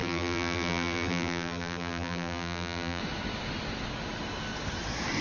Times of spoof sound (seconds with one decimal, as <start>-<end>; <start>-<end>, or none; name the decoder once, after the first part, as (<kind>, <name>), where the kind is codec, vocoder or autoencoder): 0.0-3.0 (vocoder, BigVGAN v2)